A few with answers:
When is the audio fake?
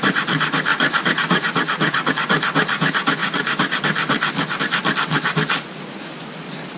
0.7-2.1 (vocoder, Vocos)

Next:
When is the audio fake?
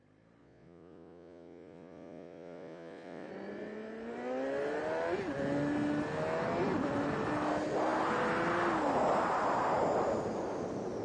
0.4-3.3 (vocoder, Vocos)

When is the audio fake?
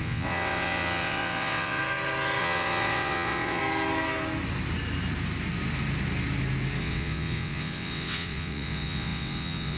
0.0-1.8 (vocoder, WaveNeXt); 2.4-3.6; 6.8-9.8